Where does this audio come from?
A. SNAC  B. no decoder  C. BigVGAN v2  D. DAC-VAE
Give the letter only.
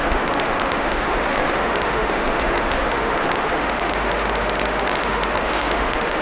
D